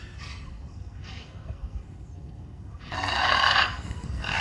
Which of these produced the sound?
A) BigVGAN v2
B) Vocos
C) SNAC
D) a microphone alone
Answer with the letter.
C